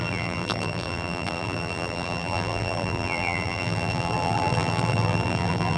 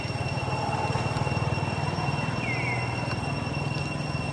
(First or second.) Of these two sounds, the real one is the second